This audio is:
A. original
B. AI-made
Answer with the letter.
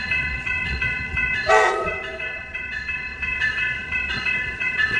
B